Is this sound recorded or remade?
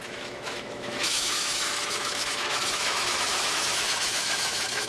remade